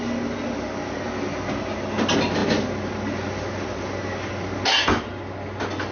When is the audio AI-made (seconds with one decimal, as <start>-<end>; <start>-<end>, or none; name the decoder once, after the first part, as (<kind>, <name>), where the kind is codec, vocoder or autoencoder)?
none